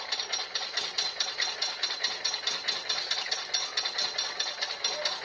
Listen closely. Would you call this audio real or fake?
real